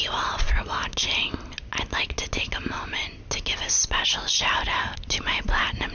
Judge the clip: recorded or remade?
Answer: recorded